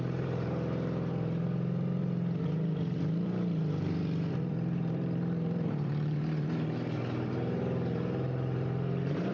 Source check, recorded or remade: remade